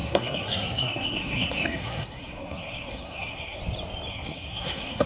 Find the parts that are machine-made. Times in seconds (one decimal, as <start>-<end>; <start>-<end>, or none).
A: 0.0-3.6; 4.1-5.1